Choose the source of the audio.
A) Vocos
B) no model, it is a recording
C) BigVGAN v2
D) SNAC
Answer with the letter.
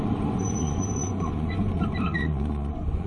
A